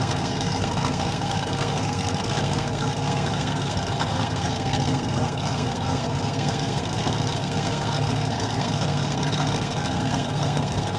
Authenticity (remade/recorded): remade